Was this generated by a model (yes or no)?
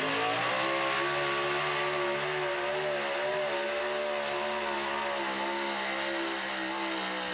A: no